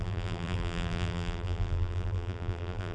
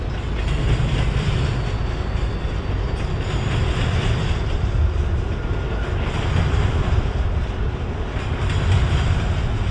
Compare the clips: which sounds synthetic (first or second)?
first